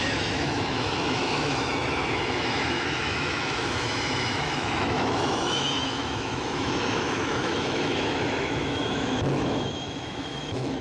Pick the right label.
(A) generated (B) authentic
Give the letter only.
A